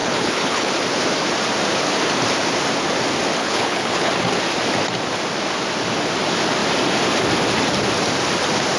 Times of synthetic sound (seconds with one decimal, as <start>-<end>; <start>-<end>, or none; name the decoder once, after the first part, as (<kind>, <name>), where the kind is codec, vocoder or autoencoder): 0.0-0.7 (codec, HILCodec); 3.4-4.1